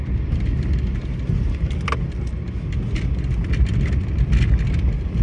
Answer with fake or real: real